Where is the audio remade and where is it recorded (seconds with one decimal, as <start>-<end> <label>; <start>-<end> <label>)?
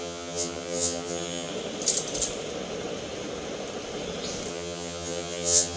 0.0-1.5 remade; 1.5-4.5 recorded; 4.5-5.8 remade